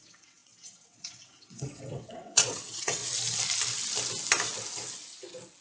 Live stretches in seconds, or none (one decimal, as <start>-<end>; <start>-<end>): 3.0-5.6